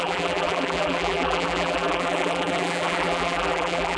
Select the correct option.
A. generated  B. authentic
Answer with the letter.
A